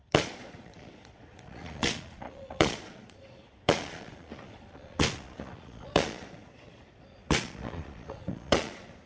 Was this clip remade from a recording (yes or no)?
yes